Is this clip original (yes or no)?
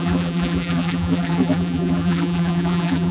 no